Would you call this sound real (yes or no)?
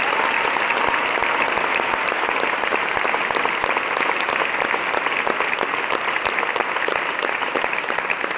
yes